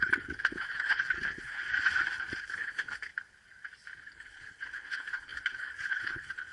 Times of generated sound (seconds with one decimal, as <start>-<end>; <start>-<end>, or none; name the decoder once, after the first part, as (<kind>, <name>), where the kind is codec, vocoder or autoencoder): 0.0-1.6 (codec, HILCodec); 2.4-3.1; 4.0-6.5